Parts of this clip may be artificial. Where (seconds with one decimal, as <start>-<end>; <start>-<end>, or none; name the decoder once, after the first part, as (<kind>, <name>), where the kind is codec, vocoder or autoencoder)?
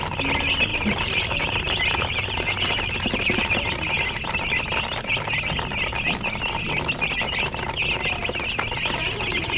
0.7-3.5 (vocoder, BigVGAN v2)